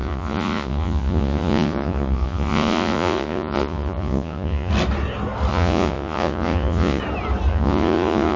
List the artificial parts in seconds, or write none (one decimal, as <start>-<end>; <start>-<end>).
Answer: 0.0-4.7; 5.5-7.0; 7.5-8.4

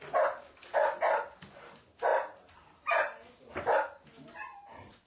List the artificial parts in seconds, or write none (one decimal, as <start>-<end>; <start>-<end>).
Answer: none